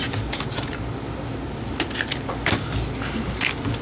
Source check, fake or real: real